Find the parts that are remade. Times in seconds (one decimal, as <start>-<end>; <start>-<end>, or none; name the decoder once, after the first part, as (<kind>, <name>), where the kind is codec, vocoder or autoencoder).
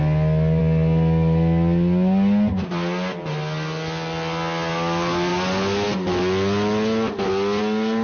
none